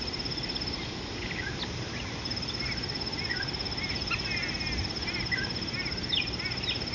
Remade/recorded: recorded